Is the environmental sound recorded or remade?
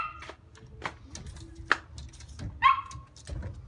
recorded